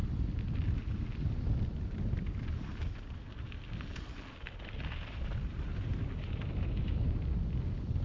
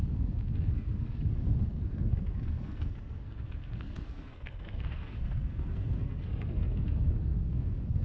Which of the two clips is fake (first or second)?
second